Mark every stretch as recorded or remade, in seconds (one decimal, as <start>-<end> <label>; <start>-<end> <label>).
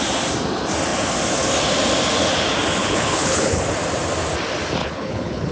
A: 0.0-2.8 recorded; 2.8-3.6 remade; 3.6-4.8 recorded; 4.8-5.5 remade